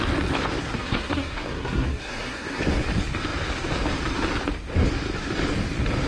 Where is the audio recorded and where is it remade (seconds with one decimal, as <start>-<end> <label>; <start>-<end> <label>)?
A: 0.0-0.6 recorded; 0.6-2.6 remade; 2.6-6.1 recorded